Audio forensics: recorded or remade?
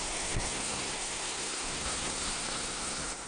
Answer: remade